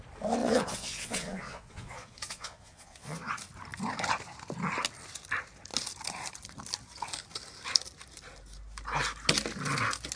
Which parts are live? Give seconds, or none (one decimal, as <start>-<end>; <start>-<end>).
0.0-0.4; 3.3-10.2